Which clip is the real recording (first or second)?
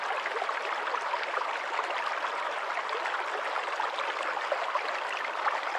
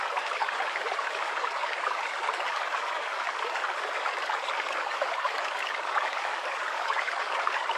first